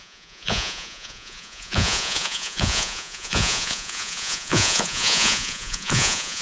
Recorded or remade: remade